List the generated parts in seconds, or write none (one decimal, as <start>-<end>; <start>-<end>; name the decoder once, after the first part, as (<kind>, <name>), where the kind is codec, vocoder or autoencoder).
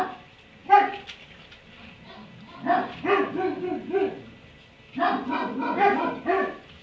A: none